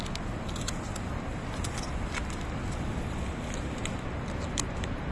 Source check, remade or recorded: recorded